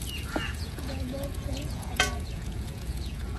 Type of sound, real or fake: fake